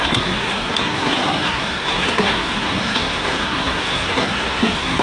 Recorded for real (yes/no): no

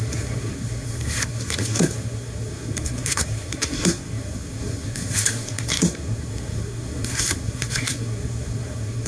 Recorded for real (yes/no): no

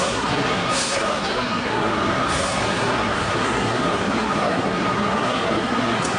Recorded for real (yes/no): no